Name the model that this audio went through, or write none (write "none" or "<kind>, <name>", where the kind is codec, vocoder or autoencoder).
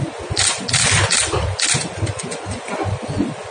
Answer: none